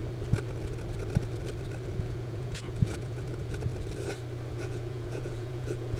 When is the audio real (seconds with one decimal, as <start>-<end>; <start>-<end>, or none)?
0.0-1.9; 3.7-4.5